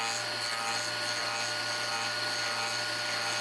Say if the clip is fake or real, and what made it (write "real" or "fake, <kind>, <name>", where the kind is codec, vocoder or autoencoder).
real